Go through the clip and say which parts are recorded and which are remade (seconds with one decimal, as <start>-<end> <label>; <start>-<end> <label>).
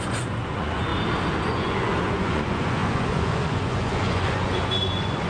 0.0-0.9 remade; 0.9-1.4 recorded; 1.4-5.3 remade